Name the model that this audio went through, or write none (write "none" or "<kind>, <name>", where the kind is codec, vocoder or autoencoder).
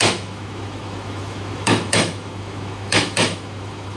autoencoder, DAC-VAE